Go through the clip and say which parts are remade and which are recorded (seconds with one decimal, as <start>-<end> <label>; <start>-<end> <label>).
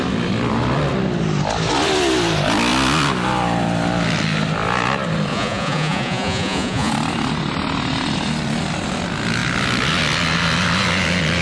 0.0-5.3 recorded; 5.3-6.9 remade; 6.9-11.4 recorded